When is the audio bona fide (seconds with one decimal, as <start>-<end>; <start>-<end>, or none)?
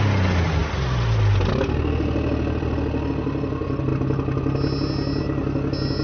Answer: 0.0-6.0